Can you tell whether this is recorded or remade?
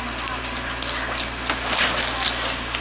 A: recorded